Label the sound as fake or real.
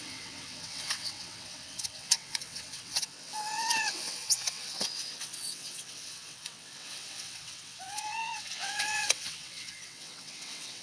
fake